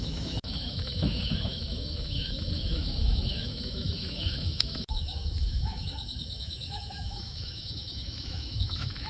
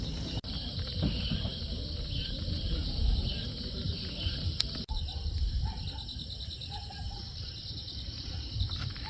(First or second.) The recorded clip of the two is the second